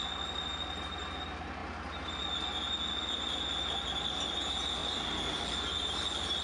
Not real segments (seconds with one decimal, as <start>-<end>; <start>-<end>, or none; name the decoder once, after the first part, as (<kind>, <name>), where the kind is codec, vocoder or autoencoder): none